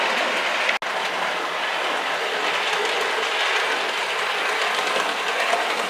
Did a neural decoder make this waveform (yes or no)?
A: no